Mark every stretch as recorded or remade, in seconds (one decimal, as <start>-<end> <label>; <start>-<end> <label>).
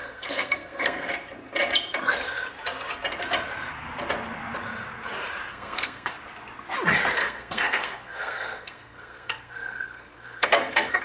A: 0.0-1.1 remade; 1.1-5.5 recorded; 5.5-6.1 remade; 6.1-7.2 recorded; 7.2-11.0 remade